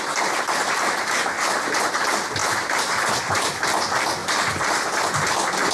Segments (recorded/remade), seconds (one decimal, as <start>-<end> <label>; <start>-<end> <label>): 0.0-5.7 recorded